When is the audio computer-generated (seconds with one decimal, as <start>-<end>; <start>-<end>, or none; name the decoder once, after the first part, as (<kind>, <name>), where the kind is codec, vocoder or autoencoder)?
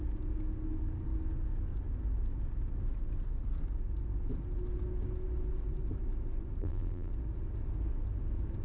6.6-7.1 (vocoder, BigVGAN v2)